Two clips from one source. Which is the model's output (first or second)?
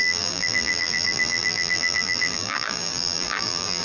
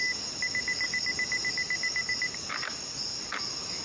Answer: first